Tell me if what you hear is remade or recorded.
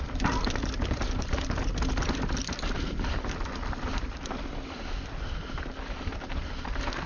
recorded